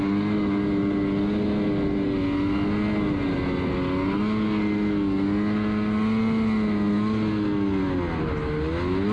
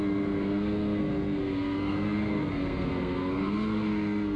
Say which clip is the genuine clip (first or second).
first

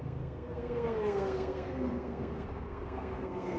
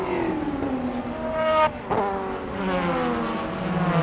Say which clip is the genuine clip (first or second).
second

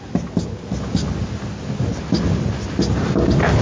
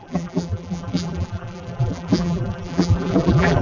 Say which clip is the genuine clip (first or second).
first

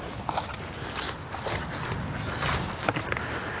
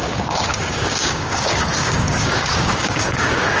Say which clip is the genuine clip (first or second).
first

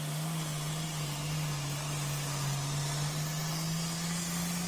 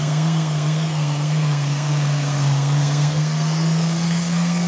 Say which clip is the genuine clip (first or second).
first